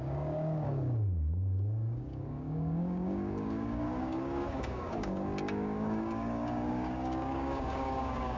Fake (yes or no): yes